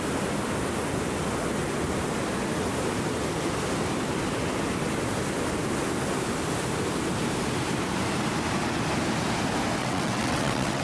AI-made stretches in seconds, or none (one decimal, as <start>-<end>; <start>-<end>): 9.8-10.8